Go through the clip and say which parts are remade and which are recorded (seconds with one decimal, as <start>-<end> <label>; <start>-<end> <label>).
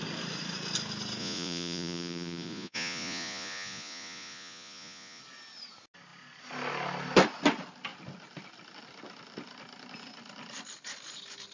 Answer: 0.0-1.2 recorded; 1.2-5.2 remade; 5.2-11.5 recorded